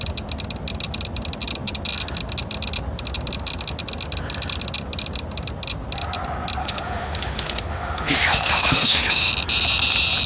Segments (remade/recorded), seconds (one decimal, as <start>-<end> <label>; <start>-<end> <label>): 0.0-6.6 recorded; 6.6-9.3 remade; 9.3-10.3 recorded